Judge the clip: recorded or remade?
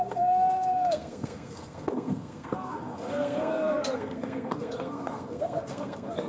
remade